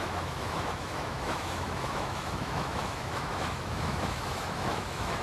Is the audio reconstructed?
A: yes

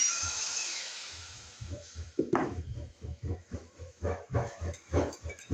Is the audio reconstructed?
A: yes